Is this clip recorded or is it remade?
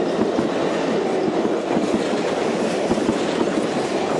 recorded